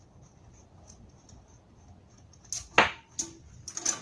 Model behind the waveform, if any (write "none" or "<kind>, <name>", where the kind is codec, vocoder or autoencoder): none